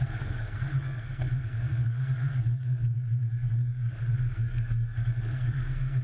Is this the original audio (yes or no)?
no